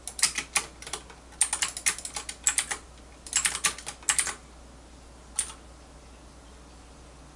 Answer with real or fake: real